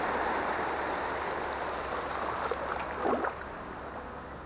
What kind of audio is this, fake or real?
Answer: real